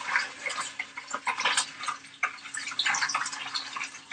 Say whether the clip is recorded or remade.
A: recorded